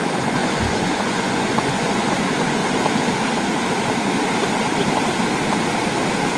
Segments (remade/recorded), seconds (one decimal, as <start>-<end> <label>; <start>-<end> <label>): 0.0-2.6 remade; 2.6-6.4 recorded